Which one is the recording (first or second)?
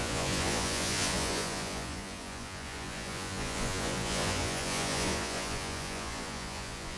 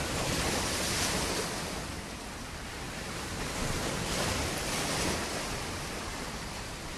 second